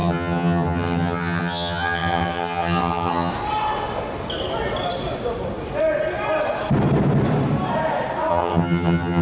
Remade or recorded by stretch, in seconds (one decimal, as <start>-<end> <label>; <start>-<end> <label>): 0.0-3.3 remade; 3.3-8.3 recorded; 8.3-9.2 remade